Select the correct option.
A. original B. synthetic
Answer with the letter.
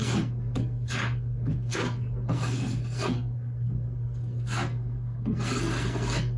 B